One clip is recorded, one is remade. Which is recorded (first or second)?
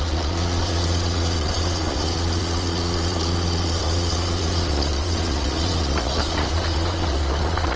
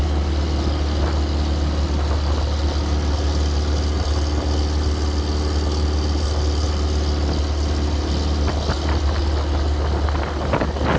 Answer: second